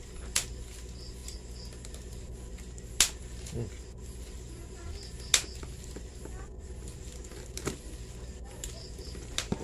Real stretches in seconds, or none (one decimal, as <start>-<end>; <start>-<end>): 0.0-9.6